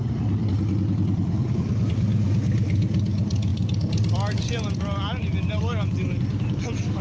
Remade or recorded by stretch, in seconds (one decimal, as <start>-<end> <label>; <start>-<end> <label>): 0.0-7.0 recorded